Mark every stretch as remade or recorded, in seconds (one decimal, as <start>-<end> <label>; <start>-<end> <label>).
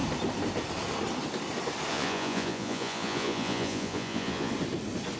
0.0-1.9 recorded; 1.9-4.5 remade; 4.5-5.2 recorded